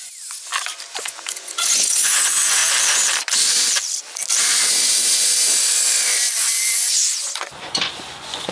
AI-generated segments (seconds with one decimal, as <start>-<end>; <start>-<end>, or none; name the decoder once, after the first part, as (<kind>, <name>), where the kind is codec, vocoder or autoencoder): 0.0-0.5 (vocoder, Vocos); 1.0-2.6; 6.6-8.5